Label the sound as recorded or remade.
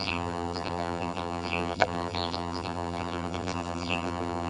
remade